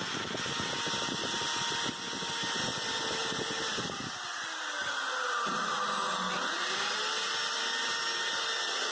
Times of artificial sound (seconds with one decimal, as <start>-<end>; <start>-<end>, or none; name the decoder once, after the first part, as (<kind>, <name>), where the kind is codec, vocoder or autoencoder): 3.2-4.0 (vocoder, BigVGAN v2); 6.4-7.0